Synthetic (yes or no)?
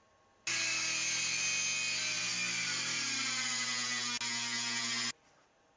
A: no